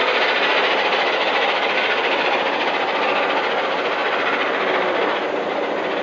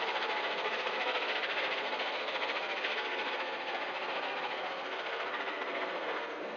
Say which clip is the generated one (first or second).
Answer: second